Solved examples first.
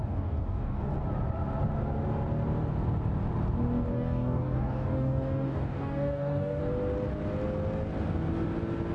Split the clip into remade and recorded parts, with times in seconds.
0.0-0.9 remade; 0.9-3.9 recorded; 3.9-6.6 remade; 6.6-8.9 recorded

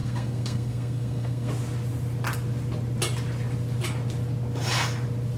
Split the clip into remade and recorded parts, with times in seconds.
0.0-1.5 remade; 1.5-5.4 recorded

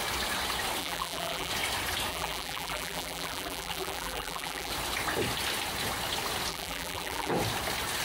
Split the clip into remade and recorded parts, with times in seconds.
0.0-0.8 recorded; 0.8-1.5 remade; 1.5-2.1 recorded; 2.1-4.7 remade; 4.7-6.5 recorded; 6.5-7.3 remade; 7.3-8.0 recorded

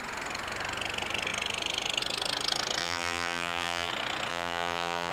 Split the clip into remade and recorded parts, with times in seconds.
0.0-2.8 recorded; 2.8-3.9 remade; 3.9-4.3 recorded; 4.3-5.1 remade

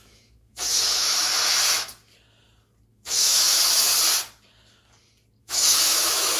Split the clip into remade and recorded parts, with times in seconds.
0.0-1.3 remade; 1.3-2.9 recorded; 2.9-3.9 remade; 3.9-5.4 recorded; 5.4-6.4 remade

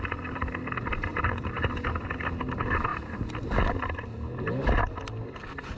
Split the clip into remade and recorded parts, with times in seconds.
0.0-1.1 recorded; 1.1-2.4 remade; 2.4-5.8 recorded

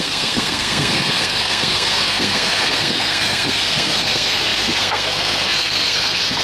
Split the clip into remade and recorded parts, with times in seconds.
0.0-6.4 remade

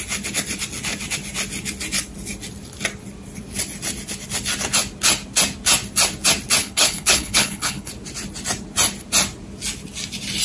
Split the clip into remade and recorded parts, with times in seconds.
0.0-6.6 recorded; 6.6-7.9 remade; 7.9-10.4 recorded